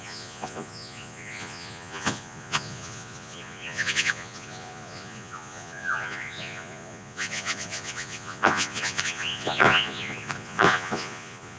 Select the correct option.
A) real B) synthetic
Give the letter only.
B